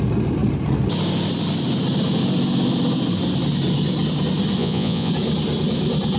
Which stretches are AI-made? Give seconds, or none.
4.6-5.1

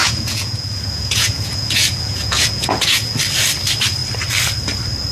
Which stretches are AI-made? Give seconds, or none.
0.0-3.1

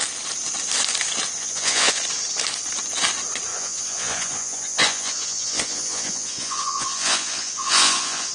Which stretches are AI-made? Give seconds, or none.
1.4-2.0; 3.5-8.3

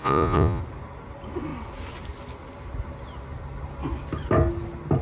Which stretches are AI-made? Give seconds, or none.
0.0-0.6

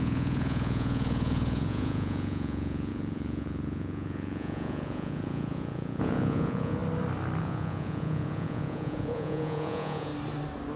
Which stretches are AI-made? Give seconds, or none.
0.0-6.8; 7.4-10.1

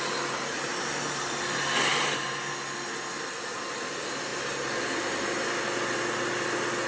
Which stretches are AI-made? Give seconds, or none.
none

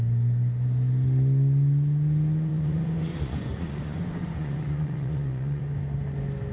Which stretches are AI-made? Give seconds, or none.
2.5-5.6